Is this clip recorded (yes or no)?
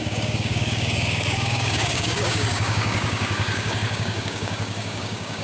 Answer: no